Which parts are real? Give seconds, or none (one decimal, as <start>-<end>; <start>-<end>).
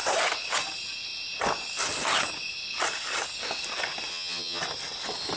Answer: 0.0-4.1; 4.6-5.4